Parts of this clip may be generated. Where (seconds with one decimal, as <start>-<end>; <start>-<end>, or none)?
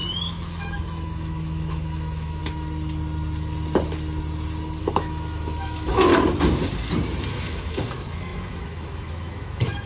0.0-2.4; 4.8-6.1; 7.3-9.9